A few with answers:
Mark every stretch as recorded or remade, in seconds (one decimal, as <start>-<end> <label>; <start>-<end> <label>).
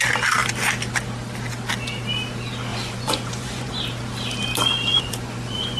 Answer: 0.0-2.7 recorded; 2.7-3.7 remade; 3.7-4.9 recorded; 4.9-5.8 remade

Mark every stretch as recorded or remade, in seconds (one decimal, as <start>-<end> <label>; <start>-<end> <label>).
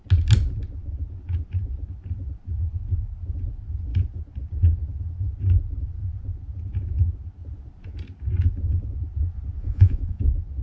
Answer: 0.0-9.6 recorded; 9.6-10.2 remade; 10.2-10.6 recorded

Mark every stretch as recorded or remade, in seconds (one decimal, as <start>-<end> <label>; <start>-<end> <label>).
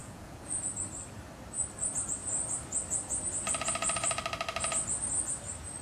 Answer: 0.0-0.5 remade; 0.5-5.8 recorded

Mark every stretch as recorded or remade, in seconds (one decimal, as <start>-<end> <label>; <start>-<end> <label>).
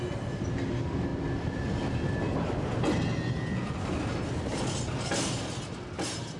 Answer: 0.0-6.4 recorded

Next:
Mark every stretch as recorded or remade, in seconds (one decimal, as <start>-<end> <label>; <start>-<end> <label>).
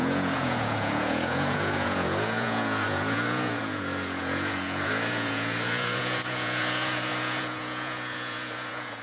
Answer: 0.0-9.0 remade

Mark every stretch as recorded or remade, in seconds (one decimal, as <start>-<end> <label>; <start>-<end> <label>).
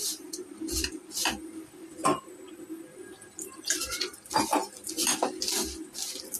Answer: 0.0-6.4 recorded